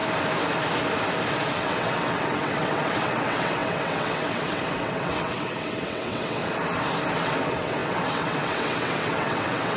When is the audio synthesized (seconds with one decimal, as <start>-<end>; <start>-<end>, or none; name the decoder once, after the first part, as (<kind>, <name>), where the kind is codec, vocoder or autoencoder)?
1.3-6.4 (vocoder, WaveNeXt); 7.1-9.8